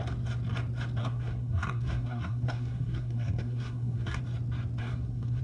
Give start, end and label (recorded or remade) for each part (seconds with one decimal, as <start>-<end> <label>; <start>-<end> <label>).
0.0-1.0 recorded; 1.0-4.2 remade; 4.2-4.8 recorded; 4.8-5.4 remade